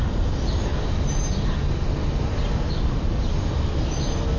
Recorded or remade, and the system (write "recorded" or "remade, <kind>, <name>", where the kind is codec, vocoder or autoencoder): recorded